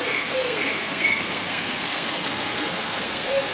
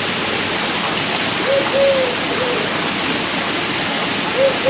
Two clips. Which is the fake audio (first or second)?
first